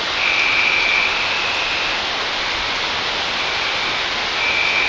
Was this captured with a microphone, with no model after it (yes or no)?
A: yes